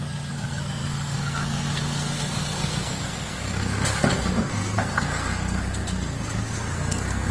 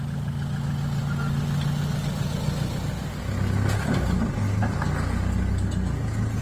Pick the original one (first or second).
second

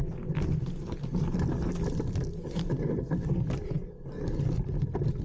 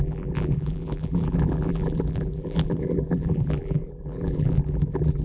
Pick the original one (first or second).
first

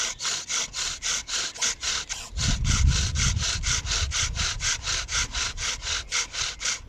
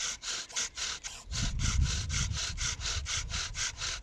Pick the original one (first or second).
second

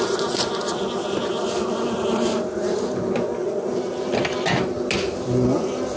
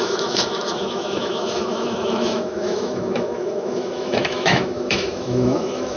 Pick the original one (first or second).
first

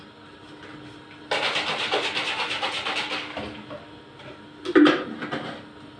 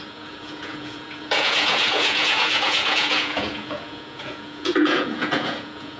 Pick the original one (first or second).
first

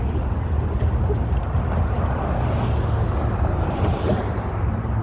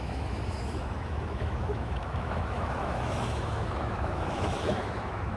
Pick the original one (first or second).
first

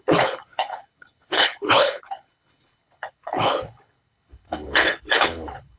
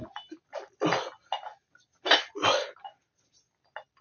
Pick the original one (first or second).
second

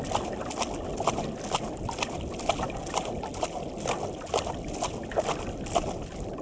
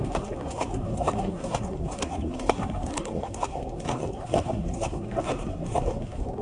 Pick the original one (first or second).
first